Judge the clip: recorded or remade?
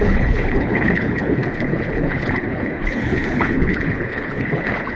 remade